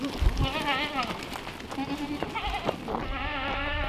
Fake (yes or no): no